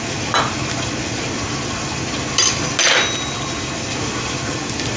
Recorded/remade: recorded